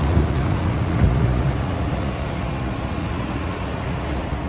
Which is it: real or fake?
fake